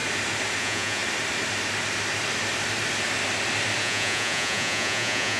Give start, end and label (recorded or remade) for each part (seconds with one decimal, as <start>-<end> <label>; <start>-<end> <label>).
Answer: 0.0-0.6 recorded; 0.6-1.0 remade; 1.0-3.8 recorded; 3.8-5.4 remade